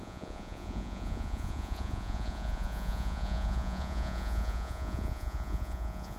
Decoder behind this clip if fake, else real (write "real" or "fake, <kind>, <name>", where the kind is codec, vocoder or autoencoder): fake, vocoder, Vocos